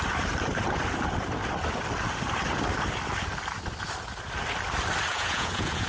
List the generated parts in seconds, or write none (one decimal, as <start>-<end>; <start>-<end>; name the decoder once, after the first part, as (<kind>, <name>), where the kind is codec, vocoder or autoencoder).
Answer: 5.1-5.9 (vocoder, Vocos)